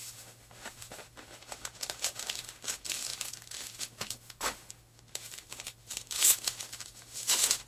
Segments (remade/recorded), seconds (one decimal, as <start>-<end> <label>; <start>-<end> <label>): 0.0-7.7 remade